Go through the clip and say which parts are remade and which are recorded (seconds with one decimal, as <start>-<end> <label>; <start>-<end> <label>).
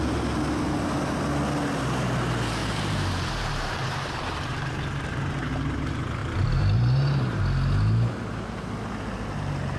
0.0-2.6 recorded; 2.6-5.5 remade; 5.5-6.2 recorded; 6.2-7.4 remade; 7.4-9.8 recorded